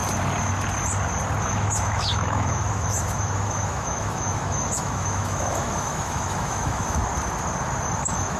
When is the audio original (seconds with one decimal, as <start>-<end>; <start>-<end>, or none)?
0.0-1.4; 7.0-8.0